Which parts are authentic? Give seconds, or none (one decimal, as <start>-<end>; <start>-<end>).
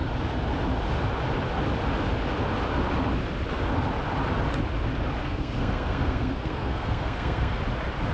0.0-5.2; 7.6-8.1